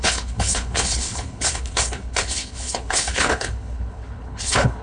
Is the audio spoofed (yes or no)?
yes